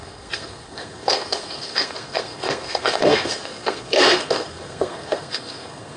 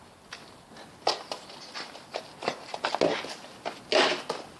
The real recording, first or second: second